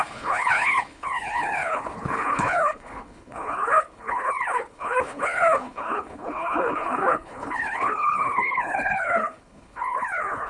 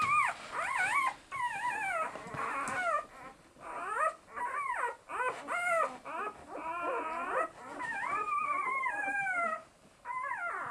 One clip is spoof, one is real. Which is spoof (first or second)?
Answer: first